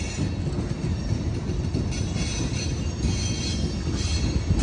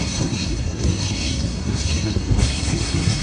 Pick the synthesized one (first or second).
second